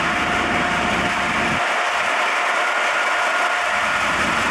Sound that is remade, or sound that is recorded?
recorded